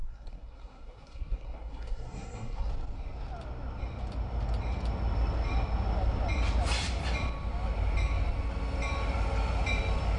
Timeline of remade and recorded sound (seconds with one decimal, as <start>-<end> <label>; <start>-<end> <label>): 0.0-2.7 remade; 2.7-10.2 recorded